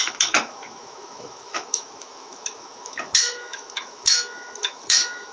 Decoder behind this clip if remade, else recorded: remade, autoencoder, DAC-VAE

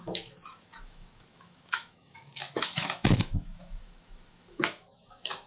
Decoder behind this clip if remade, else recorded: remade, autoencoder, DAC-VAE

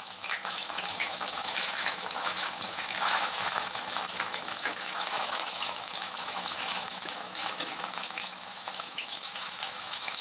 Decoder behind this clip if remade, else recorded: remade, autoencoder, DAC-VAE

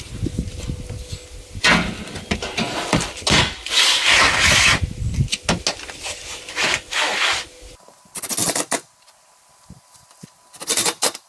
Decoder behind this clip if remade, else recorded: recorded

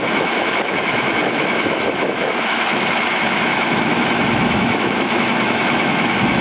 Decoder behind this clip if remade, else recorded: remade, autoencoder, DAC-VAE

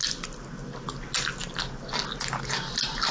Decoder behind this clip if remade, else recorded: recorded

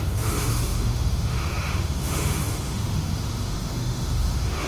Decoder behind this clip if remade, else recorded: remade, autoencoder, DAC-VAE